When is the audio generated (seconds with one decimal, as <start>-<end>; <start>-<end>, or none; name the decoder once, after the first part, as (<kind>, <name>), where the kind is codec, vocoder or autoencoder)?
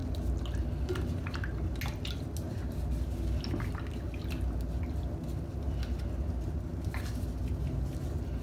none